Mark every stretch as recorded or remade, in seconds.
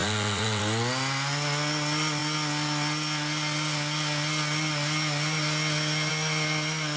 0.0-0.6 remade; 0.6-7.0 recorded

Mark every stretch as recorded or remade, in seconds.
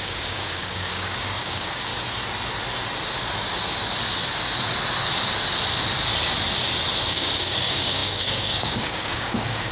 0.0-1.9 remade; 1.9-7.1 recorded; 7.1-9.7 remade